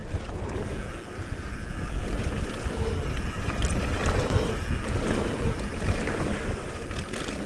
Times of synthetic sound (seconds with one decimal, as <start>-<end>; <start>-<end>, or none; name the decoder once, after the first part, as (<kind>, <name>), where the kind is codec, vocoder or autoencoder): none

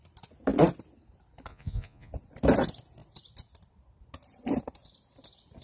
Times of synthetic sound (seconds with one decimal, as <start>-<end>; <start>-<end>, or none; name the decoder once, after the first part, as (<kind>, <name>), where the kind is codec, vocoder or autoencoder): 1.5-2.1 (vocoder, Vocos)

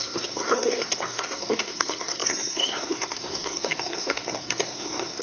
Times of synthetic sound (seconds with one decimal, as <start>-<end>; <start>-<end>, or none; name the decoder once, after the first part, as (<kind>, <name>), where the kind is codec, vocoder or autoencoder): 0.0-5.2 (codec, SNAC)

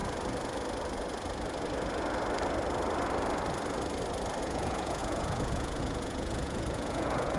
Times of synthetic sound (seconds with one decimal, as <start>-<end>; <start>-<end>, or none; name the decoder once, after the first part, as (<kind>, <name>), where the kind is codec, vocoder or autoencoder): 4.4-7.4 (vocoder, Vocos)

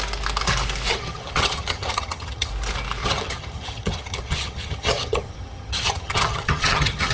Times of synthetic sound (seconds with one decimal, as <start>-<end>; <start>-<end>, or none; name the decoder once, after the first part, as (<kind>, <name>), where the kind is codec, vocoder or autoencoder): 0.9-2.5 (vocoder, HiFi-GAN); 3.0-7.1